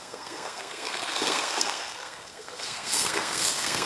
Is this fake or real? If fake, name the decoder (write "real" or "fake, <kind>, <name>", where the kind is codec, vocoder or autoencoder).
fake, codec, SNAC